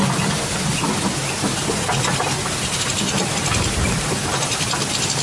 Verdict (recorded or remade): recorded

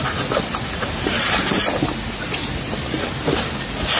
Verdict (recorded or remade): recorded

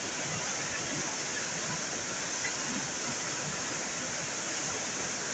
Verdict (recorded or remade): recorded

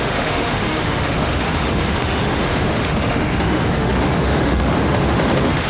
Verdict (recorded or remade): remade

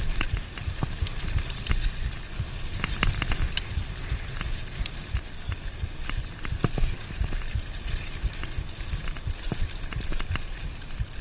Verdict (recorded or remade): recorded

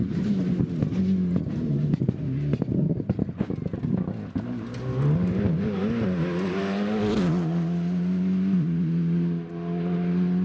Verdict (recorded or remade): recorded